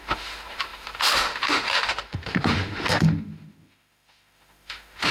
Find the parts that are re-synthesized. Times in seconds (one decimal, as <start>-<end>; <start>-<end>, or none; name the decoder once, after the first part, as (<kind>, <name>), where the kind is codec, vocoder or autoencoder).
0.0-5.1 (autoencoder, DAC-VAE)